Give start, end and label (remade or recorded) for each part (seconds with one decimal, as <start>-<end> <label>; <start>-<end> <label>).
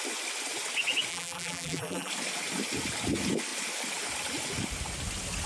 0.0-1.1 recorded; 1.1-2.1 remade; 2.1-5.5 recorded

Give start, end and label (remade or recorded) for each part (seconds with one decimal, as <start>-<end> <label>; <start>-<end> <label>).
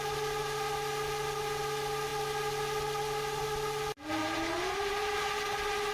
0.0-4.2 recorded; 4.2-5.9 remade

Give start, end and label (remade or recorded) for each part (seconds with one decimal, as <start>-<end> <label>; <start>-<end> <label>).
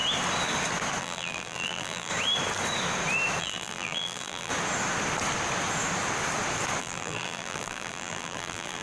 0.0-1.0 recorded; 1.0-2.1 remade; 2.1-3.4 recorded; 3.4-4.5 remade; 4.5-6.8 recorded; 6.8-8.8 remade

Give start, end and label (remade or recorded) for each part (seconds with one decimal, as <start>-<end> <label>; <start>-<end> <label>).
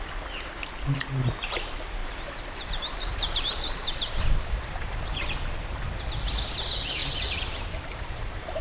0.0-2.0 recorded; 2.0-5.5 remade; 5.5-7.0 recorded; 7.0-8.6 remade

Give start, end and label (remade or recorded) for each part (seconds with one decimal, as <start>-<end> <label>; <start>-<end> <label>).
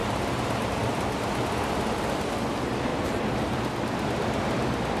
0.0-0.7 remade; 0.7-2.9 recorded; 2.9-3.4 remade; 3.4-5.0 recorded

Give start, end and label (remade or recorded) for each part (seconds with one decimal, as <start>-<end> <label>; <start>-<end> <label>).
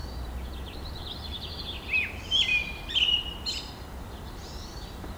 0.0-2.1 recorded; 2.1-2.5 remade; 2.5-3.6 recorded; 3.6-5.2 remade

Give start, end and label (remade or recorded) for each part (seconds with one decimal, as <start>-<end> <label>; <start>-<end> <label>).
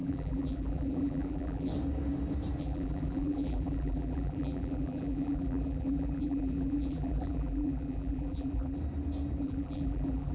0.0-1.7 remade; 1.7-2.6 recorded; 2.6-8.8 remade; 8.8-9.4 recorded; 9.4-10.3 remade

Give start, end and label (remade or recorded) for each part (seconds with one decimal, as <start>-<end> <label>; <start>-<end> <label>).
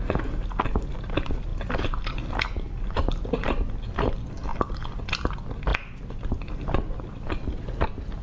0.0-1.5 recorded; 1.5-3.8 remade; 3.8-4.5 recorded; 4.5-5.3 remade; 5.3-5.7 recorded; 5.7-6.2 remade; 6.2-8.2 recorded